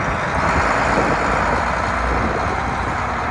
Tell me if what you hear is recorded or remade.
recorded